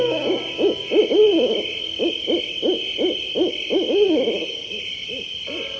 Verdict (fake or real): real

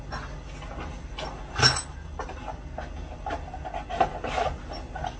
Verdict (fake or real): real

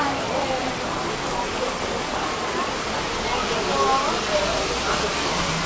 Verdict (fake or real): real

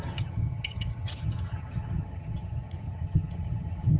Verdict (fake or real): fake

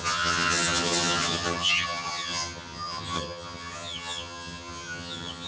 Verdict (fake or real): fake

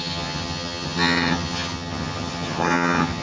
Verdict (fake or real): fake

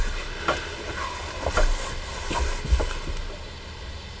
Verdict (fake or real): real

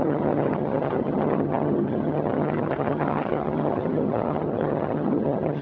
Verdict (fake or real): fake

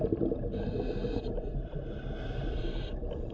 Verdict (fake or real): real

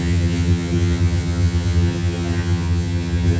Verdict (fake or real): fake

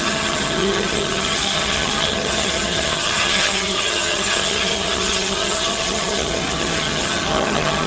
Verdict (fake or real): fake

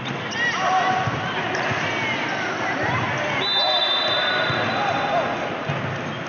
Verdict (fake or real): real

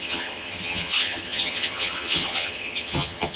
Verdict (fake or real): fake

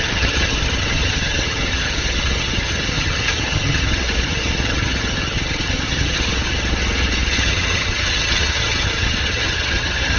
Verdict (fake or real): fake